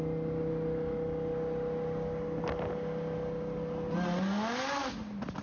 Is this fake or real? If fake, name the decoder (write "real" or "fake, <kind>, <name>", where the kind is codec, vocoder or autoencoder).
real